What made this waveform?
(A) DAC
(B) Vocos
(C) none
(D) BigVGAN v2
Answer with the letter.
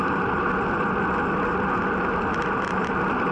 C